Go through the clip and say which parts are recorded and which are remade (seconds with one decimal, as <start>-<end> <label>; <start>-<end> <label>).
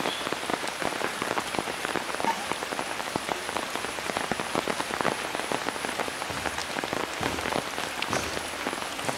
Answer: 0.0-0.5 recorded; 0.5-4.3 remade; 4.3-9.2 recorded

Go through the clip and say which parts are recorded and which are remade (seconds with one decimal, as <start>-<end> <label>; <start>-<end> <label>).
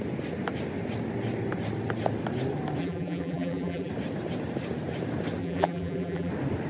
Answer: 0.0-2.8 recorded; 2.8-3.9 remade; 3.9-5.4 recorded; 5.4-6.3 remade; 6.3-6.7 recorded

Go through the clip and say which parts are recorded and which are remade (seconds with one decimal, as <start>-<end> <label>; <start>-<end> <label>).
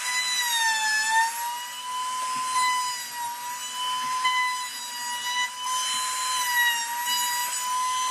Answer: 0.0-8.1 recorded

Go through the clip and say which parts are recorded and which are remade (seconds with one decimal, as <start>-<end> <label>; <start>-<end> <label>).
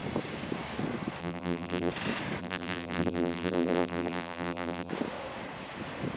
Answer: 0.0-1.2 recorded; 1.2-1.9 remade; 1.9-2.4 recorded; 2.4-4.9 remade; 4.9-6.2 recorded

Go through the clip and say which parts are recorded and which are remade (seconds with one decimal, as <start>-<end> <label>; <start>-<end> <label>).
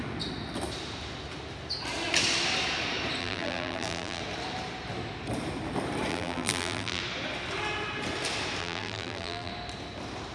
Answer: 0.0-3.2 recorded; 3.2-4.2 remade; 4.2-6.1 recorded; 6.1-7.0 remade; 7.0-8.6 recorded; 8.6-9.5 remade; 9.5-10.3 recorded